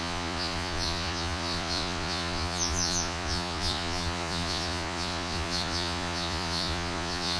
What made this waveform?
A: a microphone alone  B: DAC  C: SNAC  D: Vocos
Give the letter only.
D